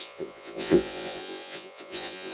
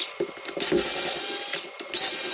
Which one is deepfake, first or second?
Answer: first